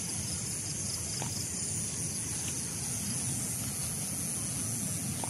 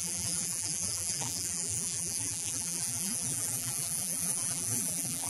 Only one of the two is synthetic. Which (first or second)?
second